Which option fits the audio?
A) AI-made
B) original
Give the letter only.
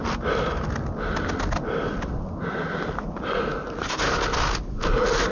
B